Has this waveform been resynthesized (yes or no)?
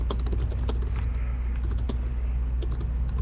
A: no